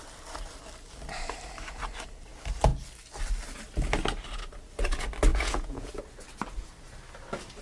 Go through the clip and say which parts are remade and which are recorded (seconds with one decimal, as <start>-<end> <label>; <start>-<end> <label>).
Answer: 0.0-5.3 recorded; 5.3-5.9 remade; 5.9-7.6 recorded